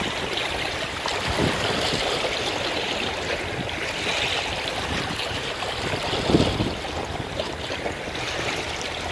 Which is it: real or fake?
real